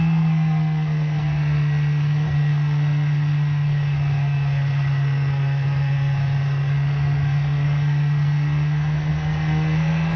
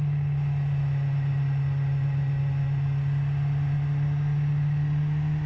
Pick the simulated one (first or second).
first